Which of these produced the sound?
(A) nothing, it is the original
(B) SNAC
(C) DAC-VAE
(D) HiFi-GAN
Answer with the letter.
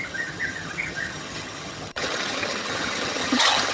D